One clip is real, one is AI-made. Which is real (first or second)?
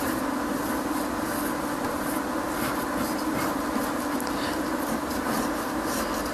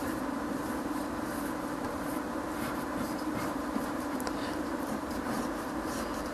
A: first